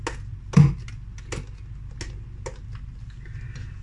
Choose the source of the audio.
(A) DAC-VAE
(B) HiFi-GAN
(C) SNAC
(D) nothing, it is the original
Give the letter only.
D